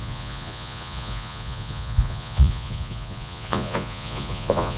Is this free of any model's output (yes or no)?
no